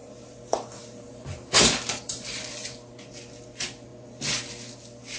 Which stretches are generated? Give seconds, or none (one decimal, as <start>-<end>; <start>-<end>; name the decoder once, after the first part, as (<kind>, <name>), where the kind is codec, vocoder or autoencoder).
0.0-2.4 (vocoder, BigVGAN v2)